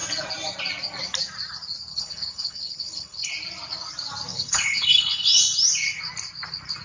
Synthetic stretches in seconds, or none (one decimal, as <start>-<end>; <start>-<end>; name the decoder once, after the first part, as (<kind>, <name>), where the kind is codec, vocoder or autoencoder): 1.9-3.3 (codec, HILCodec); 4.3-5.4